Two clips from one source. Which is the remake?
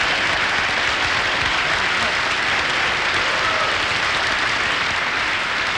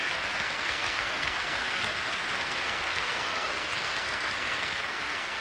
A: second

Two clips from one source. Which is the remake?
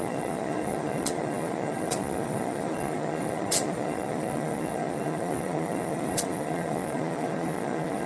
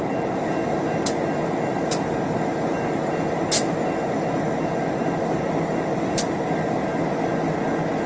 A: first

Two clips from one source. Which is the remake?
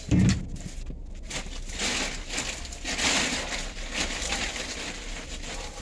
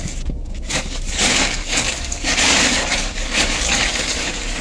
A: second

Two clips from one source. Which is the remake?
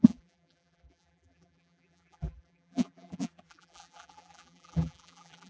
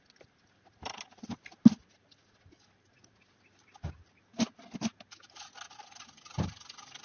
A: first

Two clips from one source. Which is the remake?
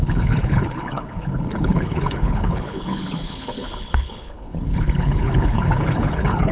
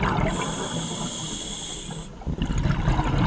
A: first